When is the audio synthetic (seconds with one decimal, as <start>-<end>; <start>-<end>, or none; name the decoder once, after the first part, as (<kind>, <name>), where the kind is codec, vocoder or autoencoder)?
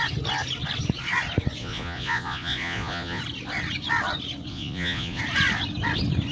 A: 1.6-3.2 (vocoder, Vocos); 4.5-5.2